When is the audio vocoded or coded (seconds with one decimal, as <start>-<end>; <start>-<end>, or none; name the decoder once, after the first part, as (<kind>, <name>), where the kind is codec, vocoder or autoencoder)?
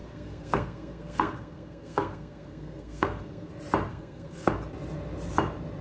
0.0-3.5 (codec, SNAC); 3.9-4.5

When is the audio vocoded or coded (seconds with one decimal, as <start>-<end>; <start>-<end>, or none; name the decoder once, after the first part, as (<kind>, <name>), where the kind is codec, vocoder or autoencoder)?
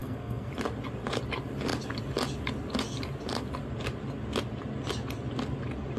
0.0-0.5 (codec, SNAC)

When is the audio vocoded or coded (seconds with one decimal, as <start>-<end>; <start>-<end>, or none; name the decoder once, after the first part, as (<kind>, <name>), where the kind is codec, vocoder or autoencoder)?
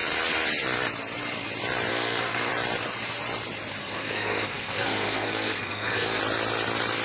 1.9-2.5 (codec, SNAC); 3.8-6.2